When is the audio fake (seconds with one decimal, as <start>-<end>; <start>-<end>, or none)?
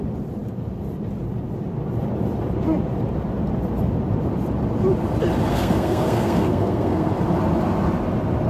5.5-7.1